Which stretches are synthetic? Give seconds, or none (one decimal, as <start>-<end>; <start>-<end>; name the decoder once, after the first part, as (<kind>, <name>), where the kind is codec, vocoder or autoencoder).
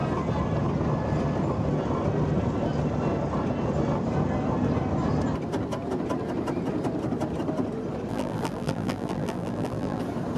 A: 8.1-10.0 (vocoder, BigVGAN v2)